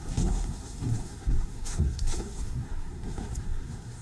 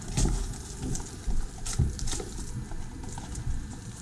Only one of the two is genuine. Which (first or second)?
second